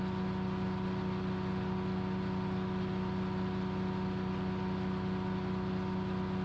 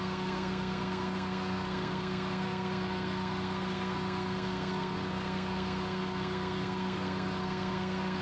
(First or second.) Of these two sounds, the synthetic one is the second